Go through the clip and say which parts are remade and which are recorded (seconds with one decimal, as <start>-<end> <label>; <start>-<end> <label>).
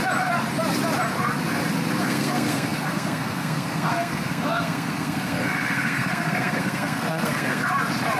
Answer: 0.0-2.0 recorded; 2.0-7.6 remade; 7.6-8.2 recorded